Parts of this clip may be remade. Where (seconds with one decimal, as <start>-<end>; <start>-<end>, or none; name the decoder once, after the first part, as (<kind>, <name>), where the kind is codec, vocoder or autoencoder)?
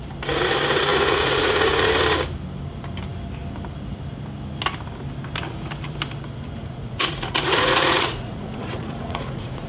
0.9-1.9 (vocoder, Vocos); 6.6-9.7